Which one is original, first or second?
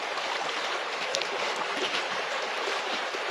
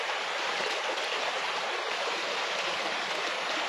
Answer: second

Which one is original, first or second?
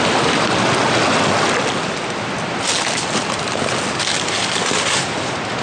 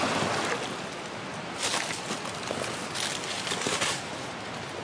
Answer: first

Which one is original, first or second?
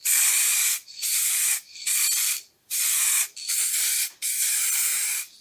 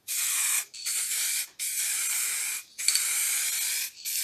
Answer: second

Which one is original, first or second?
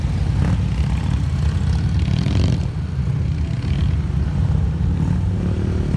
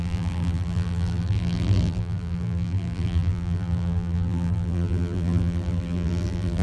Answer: first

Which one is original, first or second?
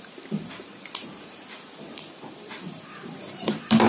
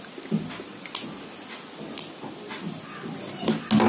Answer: second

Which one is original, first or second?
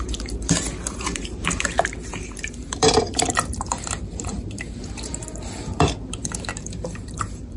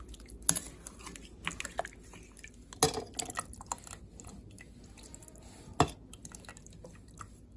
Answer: second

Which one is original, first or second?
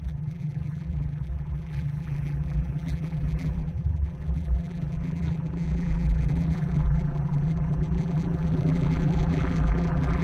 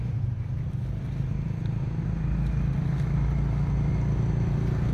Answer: second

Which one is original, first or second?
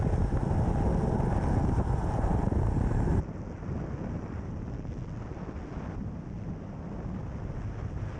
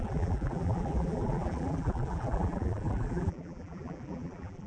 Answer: first